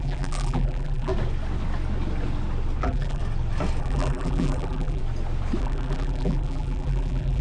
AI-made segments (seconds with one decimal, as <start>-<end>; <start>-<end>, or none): 0.0-1.1; 2.8-3.2; 3.8-5.0; 5.6-7.4